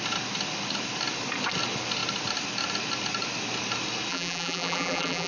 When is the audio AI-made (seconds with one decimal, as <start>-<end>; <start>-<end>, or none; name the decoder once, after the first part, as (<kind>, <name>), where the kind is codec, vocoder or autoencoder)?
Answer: 4.1-5.3 (vocoder, BigVGAN v2)